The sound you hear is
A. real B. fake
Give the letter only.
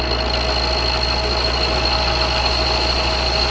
A